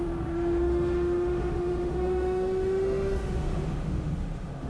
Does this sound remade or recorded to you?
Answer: remade